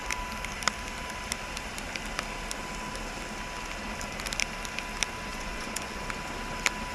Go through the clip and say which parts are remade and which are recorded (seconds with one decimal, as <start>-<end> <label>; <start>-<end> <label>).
0.0-5.3 recorded; 5.3-6.0 remade; 6.0-6.9 recorded